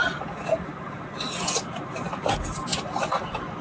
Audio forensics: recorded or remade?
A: recorded